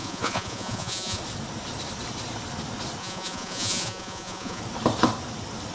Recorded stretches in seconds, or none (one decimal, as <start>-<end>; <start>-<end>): 1.2-3.0; 4.6-5.7